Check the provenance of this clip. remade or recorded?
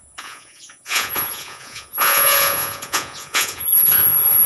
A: remade